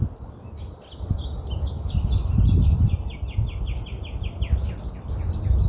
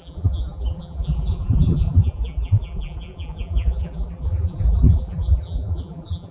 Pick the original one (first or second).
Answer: first